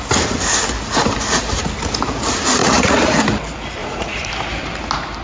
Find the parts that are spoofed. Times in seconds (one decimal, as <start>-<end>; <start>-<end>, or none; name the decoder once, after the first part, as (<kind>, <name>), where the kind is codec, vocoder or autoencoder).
2.6-3.2 (vocoder, Vocos); 3.8-4.3